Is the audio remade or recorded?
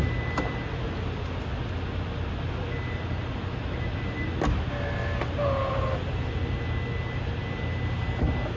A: recorded